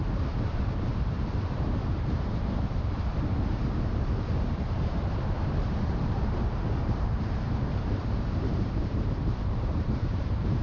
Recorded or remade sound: remade